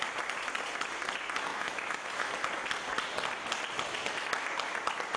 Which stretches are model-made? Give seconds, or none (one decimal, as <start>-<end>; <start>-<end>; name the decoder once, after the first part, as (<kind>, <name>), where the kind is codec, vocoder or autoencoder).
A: 1.5-2.3 (autoencoder, DAC-VAE)